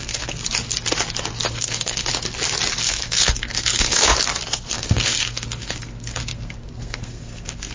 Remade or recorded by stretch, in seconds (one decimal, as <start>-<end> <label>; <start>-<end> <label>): 0.0-0.4 remade; 0.4-1.5 recorded; 1.5-2.1 remade; 2.1-2.8 recorded; 2.8-4.1 remade; 4.1-4.7 recorded; 4.7-7.7 remade

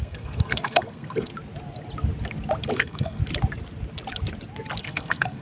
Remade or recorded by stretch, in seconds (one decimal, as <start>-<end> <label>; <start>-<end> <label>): 0.0-1.3 remade; 1.3-2.7 recorded; 2.7-3.2 remade; 3.2-4.8 recorded; 4.8-5.4 remade

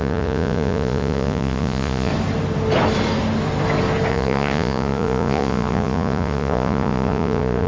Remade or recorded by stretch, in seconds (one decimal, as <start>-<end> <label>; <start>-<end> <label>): 0.0-2.1 remade; 2.1-4.1 recorded; 4.1-7.7 remade

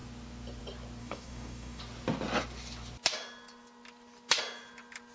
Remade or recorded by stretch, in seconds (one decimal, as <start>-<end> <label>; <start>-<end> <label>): 0.0-1.0 recorded; 1.0-1.8 remade; 1.8-5.1 recorded

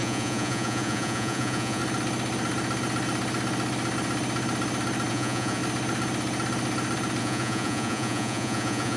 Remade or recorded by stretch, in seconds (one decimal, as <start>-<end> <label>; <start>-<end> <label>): 0.0-1.8 remade; 1.8-5.1 recorded; 5.1-5.6 remade; 5.6-7.2 recorded; 7.2-9.0 remade

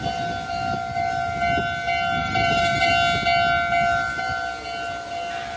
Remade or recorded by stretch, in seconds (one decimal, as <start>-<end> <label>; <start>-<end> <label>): 0.0-2.2 recorded; 2.2-2.9 remade; 2.9-5.6 recorded

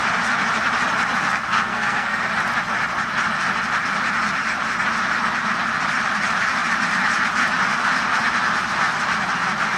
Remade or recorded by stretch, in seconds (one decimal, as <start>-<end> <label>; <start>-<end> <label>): 0.0-1.2 recorded; 1.2-2.3 remade; 2.3-9.8 recorded